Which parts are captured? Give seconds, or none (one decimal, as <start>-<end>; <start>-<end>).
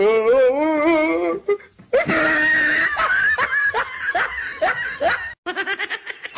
0.0-6.4